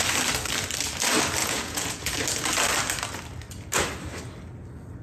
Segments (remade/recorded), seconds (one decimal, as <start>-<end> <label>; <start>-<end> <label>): 0.0-1.4 recorded; 1.4-2.1 remade; 2.1-5.0 recorded